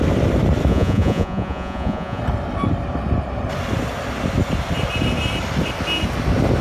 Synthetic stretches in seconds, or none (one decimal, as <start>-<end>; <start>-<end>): 0.7-2.2